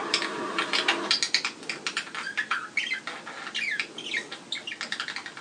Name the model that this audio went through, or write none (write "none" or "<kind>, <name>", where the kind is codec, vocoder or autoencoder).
none